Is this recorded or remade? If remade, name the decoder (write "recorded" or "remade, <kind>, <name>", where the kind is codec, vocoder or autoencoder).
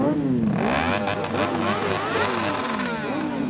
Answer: recorded